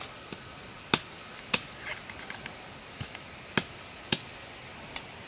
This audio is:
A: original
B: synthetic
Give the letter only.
A